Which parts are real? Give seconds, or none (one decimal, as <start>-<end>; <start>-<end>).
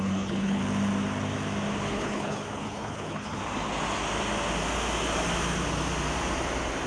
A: 0.6-1.9; 3.4-6.9